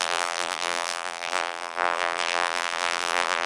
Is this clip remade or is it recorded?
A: remade